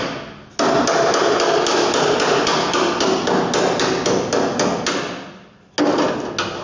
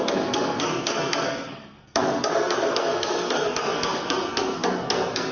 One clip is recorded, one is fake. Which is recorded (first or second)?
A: first